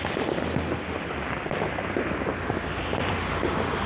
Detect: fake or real real